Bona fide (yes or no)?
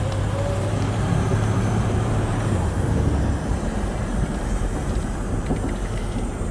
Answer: no